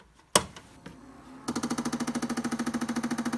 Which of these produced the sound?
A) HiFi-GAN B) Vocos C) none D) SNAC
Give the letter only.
C